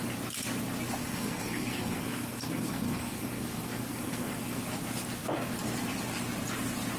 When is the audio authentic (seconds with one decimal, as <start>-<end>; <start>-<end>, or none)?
0.0-1.0; 4.6-7.0